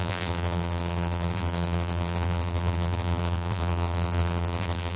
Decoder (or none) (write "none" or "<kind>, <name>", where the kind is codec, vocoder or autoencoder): vocoder, BigVGAN v2